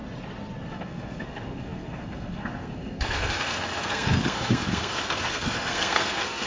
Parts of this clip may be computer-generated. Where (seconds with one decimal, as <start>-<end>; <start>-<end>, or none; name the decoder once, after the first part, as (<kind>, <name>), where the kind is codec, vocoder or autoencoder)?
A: 0.7-6.5 (codec, SNAC)